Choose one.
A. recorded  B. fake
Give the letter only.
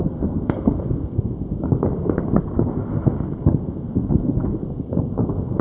B